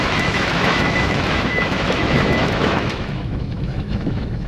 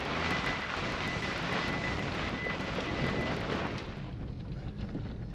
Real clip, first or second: second